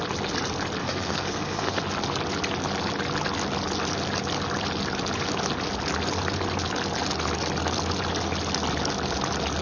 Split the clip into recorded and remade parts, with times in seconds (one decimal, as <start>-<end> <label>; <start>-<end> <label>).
0.0-0.8 recorded; 0.8-1.8 remade; 1.8-9.6 recorded